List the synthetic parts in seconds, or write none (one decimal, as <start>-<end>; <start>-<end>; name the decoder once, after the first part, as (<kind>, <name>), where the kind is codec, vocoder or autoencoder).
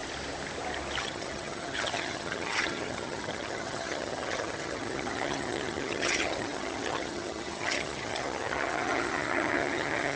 1.0-10.2 (vocoder, HiFi-GAN)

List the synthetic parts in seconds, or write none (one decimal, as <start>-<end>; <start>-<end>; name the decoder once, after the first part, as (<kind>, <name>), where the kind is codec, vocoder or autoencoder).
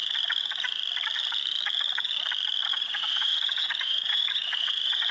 2.7-5.1 (vocoder, Vocos)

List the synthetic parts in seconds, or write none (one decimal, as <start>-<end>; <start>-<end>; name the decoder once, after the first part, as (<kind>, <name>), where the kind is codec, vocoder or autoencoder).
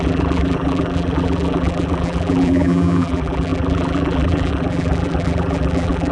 0.0-6.1 (vocoder, BigVGAN v2)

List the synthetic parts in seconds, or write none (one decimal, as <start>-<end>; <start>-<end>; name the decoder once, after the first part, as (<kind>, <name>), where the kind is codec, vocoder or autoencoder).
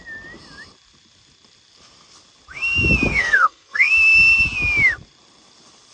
3.1-3.9 (codec, SNAC)